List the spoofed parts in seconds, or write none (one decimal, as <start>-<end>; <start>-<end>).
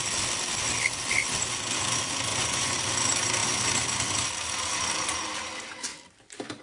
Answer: 2.3-2.8